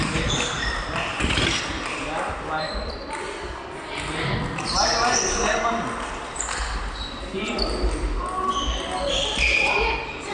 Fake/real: real